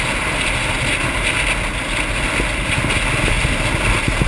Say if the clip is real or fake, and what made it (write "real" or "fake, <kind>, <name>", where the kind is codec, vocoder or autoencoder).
real